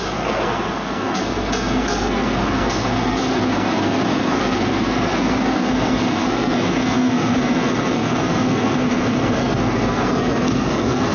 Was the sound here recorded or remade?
remade